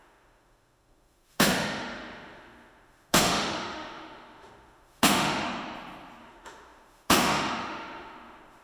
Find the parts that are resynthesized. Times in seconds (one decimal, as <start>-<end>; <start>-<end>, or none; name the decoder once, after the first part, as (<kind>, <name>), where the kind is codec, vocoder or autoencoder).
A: 0.0-5.5 (autoencoder, DAC-VAE); 6.2-8.6